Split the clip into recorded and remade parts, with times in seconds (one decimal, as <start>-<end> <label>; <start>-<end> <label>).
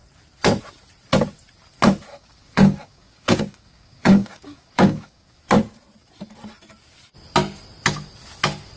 0.0-2.1 recorded; 2.1-5.4 remade; 5.4-8.8 recorded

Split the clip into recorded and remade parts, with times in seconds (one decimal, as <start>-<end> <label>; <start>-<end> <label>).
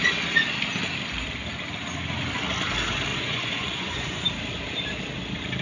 0.0-3.1 recorded; 3.1-4.2 remade; 4.2-5.6 recorded